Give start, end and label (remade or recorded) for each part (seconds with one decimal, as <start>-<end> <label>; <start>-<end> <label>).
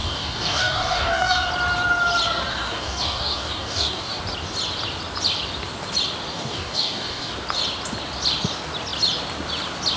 0.0-1.5 remade; 1.5-2.5 recorded; 2.5-4.2 remade; 4.2-6.3 recorded; 6.3-7.3 remade; 7.3-10.0 recorded